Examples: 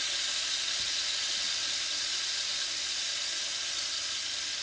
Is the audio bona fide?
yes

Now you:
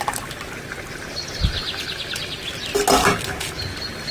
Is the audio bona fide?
yes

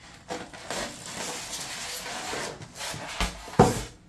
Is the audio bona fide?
yes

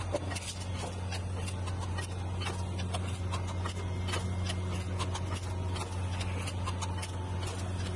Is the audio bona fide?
yes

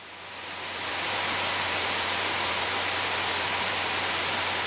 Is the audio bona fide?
yes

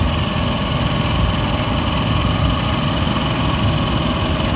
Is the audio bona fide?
yes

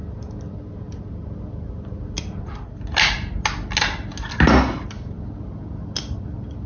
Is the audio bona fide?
yes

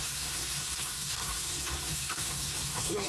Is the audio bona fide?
no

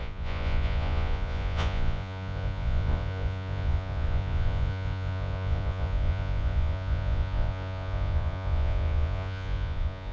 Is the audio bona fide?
no